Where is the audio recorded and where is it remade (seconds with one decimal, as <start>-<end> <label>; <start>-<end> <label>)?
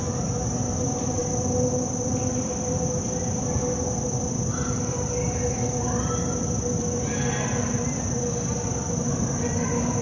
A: 0.0-10.0 recorded